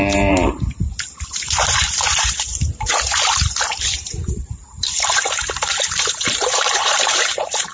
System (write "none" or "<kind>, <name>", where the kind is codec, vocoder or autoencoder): vocoder, BigVGAN v2